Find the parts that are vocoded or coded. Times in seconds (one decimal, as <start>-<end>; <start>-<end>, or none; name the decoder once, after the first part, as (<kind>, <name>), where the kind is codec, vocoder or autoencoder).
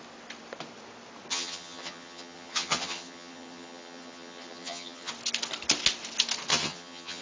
1.3-5.1 (vocoder, HiFi-GAN); 6.5-7.2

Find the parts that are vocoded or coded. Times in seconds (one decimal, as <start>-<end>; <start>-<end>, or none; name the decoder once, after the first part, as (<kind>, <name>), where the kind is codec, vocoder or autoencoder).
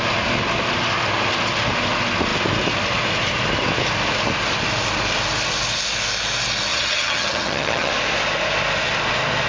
6.7-7.9 (vocoder, HiFi-GAN)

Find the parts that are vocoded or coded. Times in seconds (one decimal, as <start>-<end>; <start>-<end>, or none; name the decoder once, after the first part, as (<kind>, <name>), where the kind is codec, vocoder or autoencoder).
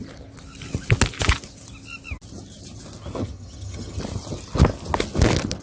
3.2-4.0 (vocoder, HiFi-GAN)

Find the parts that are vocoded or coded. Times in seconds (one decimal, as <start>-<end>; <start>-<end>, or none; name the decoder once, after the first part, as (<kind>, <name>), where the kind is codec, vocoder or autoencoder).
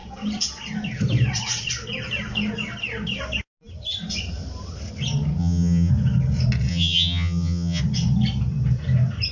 5.4-5.9 (vocoder, HiFi-GAN); 6.7-7.8